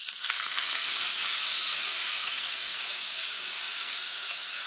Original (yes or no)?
no